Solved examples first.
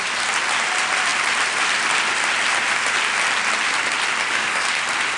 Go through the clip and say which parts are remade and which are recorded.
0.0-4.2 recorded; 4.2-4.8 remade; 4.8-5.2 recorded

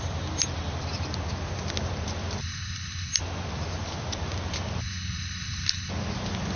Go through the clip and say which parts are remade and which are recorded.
0.0-2.4 recorded; 2.4-3.2 remade; 3.2-4.8 recorded; 4.8-5.9 remade; 5.9-6.6 recorded